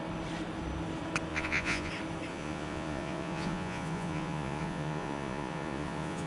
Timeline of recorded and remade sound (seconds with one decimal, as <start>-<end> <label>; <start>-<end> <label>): 0.0-1.3 recorded; 1.3-1.9 remade; 1.9-2.3 recorded; 2.3-6.3 remade